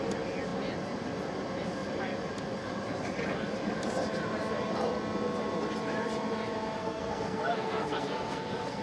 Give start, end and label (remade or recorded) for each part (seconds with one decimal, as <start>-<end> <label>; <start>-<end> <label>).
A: 0.0-6.8 recorded; 6.8-8.8 remade